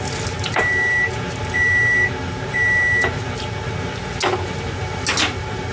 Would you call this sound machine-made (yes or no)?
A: no